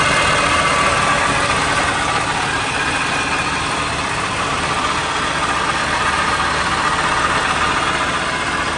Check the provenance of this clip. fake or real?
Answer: real